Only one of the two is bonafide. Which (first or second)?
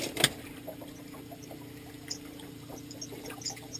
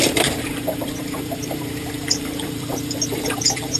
first